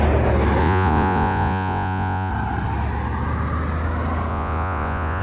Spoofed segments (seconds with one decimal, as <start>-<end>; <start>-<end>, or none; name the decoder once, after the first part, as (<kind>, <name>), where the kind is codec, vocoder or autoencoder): 0.6-2.3 (vocoder, Vocos); 4.3-5.2